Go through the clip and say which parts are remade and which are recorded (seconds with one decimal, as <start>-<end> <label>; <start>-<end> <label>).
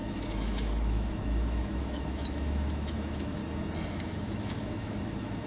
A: 0.0-3.4 remade; 3.4-3.9 recorded; 3.9-5.5 remade